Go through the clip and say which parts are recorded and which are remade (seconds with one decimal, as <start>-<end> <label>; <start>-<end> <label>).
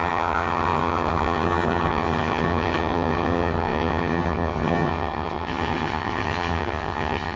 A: 0.0-7.4 remade